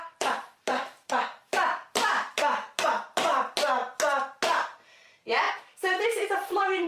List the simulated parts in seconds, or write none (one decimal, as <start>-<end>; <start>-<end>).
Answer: 0.0-3.8; 4.6-6.9